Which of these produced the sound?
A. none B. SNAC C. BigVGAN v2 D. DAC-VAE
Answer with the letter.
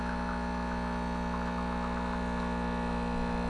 A